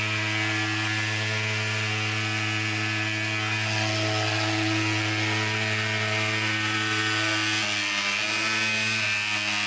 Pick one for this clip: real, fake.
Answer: real